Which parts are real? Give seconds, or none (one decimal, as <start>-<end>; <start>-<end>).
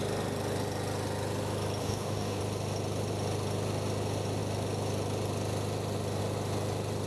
0.0-1.8; 2.4-7.1